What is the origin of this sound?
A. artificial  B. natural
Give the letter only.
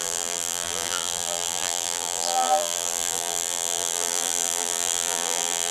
A